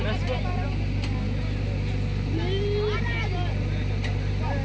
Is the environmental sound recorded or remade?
recorded